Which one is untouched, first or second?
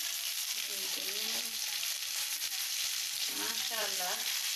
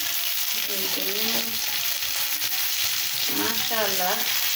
second